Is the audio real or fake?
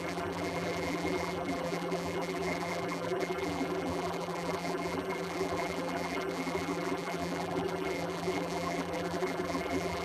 fake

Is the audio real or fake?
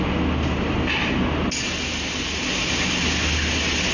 real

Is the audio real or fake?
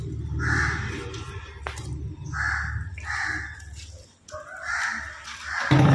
real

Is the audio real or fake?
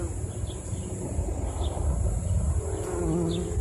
real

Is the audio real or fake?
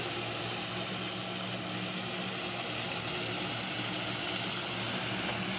real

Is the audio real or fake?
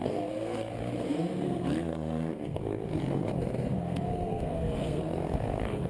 fake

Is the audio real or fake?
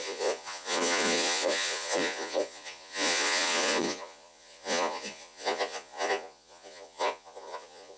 fake